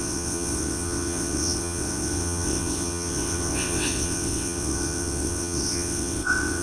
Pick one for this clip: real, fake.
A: fake